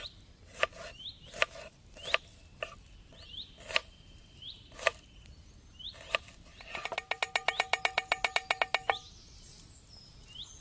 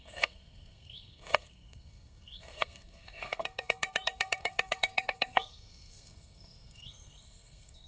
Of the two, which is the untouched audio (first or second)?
first